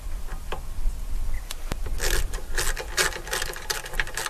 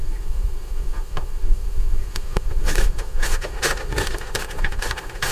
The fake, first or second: second